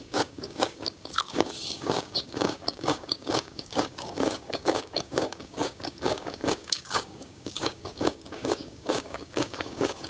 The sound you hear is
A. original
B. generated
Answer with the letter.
B